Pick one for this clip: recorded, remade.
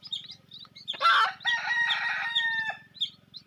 recorded